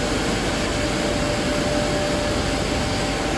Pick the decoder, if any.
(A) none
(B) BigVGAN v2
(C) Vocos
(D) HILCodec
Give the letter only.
A